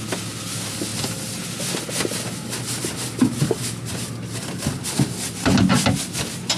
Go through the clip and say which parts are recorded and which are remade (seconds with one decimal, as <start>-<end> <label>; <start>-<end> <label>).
0.0-6.6 recorded